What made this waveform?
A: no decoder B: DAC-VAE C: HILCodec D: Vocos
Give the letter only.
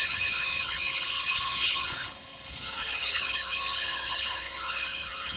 C